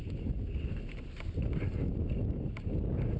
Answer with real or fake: real